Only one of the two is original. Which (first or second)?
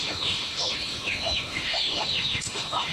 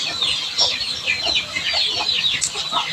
second